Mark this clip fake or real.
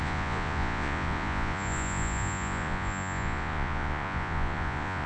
fake